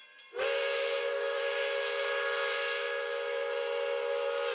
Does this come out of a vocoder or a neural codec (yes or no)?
no